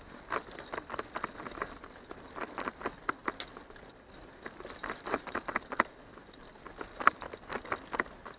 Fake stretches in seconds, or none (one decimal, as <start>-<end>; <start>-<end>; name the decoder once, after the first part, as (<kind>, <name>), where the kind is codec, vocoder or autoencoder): none